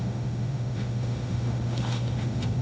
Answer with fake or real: fake